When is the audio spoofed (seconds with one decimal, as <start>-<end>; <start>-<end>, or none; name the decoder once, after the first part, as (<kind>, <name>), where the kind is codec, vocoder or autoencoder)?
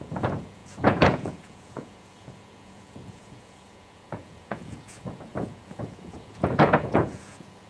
0.0-7.7 (vocoder, Vocos)